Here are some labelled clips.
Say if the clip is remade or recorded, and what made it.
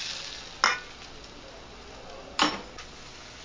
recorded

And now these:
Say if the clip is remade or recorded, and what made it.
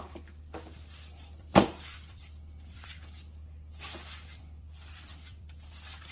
remade, vocoder, BigVGAN v2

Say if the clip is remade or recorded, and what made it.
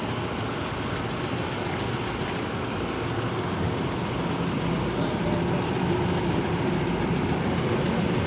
recorded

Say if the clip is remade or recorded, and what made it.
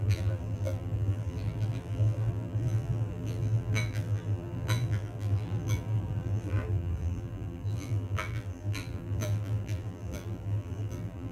remade, vocoder, BigVGAN v2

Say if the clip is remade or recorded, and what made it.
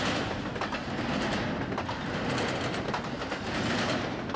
recorded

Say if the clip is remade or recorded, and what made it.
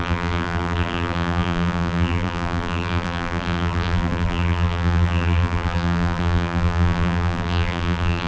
remade, vocoder, BigVGAN v2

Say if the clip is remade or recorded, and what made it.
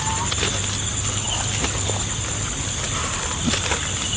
recorded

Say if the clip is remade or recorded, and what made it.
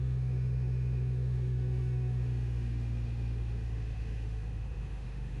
remade, autoencoder, DAC-VAE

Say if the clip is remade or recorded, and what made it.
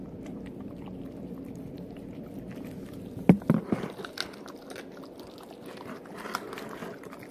recorded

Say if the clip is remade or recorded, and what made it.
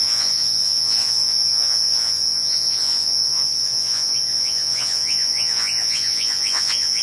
remade, vocoder, Vocos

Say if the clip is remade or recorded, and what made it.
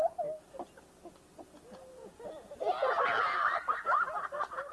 recorded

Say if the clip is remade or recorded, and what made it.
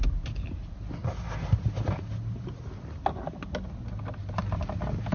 recorded